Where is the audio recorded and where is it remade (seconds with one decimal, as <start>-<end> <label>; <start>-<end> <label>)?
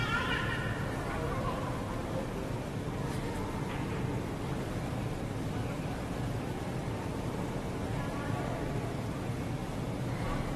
0.0-9.6 remade; 9.6-10.6 recorded